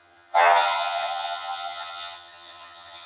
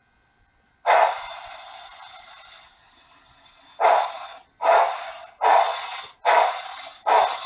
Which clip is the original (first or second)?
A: second